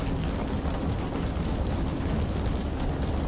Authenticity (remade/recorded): recorded